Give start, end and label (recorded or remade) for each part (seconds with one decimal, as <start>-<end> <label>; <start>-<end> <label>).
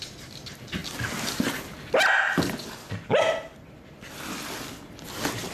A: 0.0-5.5 recorded